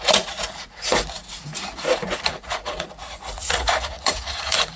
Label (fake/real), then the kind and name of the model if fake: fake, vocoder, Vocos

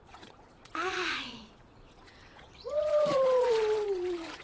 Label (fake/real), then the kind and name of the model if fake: fake, vocoder, Vocos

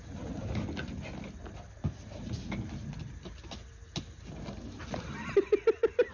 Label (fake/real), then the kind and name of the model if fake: real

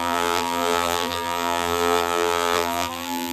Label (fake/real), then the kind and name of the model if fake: fake, vocoder, BigVGAN v2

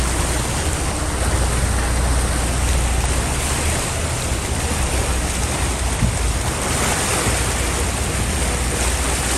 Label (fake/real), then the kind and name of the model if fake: real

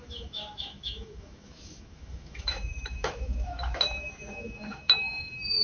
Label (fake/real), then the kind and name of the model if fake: fake, autoencoder, DAC-VAE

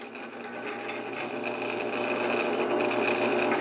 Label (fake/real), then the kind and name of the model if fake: real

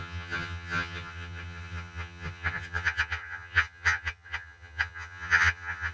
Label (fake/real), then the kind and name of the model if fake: fake, vocoder, HiFi-GAN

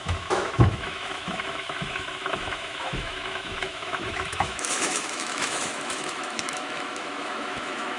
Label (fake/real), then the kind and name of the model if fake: fake, autoencoder, DAC-VAE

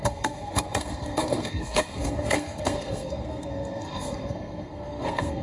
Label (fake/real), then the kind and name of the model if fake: fake, codec, SNAC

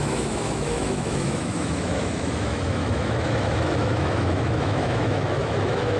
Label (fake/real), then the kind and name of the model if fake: fake, autoencoder, DAC-VAE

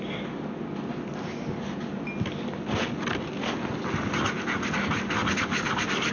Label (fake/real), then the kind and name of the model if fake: real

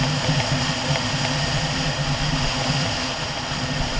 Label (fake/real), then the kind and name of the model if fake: real